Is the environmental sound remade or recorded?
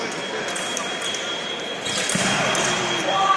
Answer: recorded